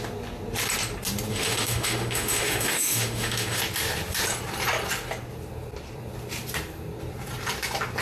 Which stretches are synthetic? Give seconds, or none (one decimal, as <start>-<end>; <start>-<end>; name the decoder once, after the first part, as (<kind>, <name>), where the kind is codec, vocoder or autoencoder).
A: 1.3-3.6 (autoencoder, DAC-VAE)